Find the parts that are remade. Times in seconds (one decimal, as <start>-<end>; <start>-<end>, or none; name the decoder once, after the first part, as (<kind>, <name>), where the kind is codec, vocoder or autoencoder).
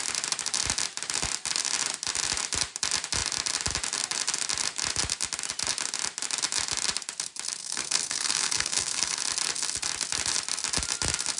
7.6-9.2 (codec, SNAC)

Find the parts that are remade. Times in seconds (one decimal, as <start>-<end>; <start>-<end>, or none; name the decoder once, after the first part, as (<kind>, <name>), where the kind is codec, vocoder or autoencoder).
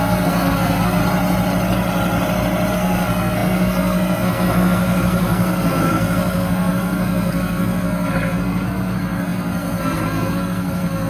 0.0-1.0 (codec, SNAC); 2.7-11.1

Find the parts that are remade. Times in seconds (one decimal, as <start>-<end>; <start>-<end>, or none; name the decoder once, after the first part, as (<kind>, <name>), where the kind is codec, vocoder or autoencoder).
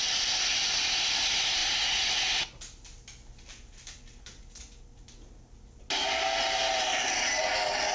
none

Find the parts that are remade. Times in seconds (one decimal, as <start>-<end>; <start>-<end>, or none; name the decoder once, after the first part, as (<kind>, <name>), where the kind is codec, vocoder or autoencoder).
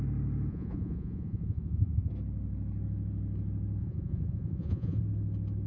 0.5-2.1 (vocoder, Vocos); 3.8-5.0